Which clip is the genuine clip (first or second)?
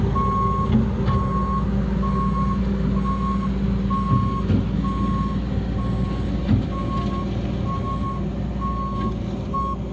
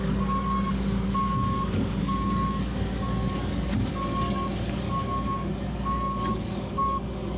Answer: first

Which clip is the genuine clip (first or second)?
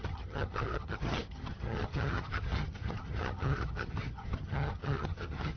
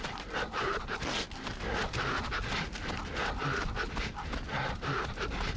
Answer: second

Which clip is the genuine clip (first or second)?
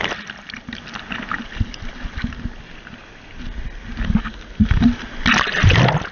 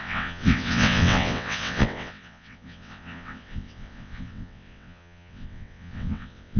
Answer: first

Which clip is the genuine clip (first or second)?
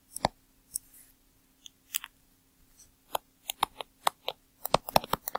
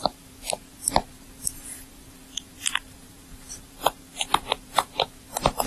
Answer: first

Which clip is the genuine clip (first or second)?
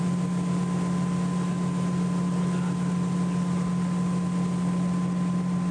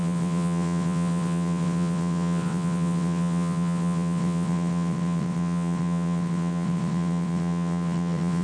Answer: first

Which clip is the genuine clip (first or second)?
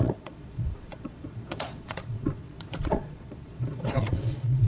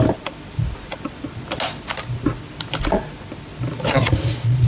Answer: second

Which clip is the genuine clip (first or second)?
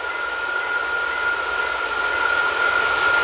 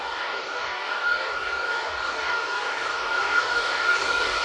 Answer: first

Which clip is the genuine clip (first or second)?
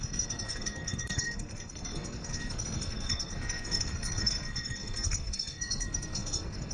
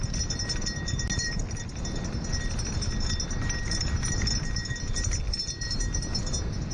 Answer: second